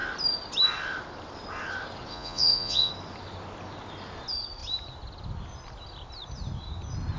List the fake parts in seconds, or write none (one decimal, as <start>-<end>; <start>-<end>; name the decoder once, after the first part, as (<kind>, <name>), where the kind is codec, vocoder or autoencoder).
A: 2.1-2.9 (vocoder, Vocos)